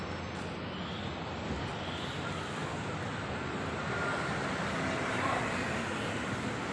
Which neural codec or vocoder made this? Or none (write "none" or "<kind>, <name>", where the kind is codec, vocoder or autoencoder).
none